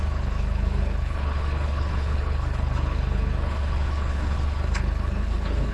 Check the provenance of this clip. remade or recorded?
remade